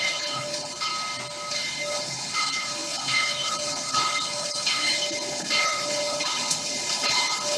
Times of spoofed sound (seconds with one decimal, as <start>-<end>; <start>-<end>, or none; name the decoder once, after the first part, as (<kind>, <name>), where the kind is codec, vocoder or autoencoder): 0.0-0.9 (codec, HILCodec); 1.5-7.6